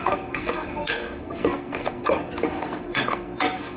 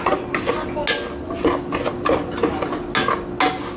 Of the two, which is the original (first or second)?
second